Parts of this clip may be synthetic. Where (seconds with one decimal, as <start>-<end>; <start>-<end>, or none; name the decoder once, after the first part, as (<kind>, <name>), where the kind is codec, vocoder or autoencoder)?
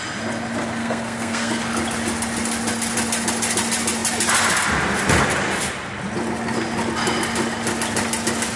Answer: 0.8-1.6 (codec, SNAC)